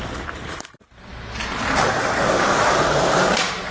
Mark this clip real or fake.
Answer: fake